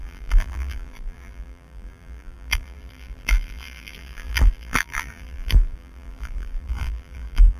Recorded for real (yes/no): no